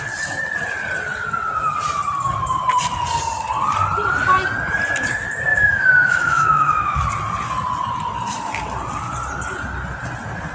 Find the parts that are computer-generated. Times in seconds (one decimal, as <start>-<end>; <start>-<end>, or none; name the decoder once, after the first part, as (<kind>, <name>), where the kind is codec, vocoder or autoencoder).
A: 5.5-7.0 (autoencoder, DAC-VAE)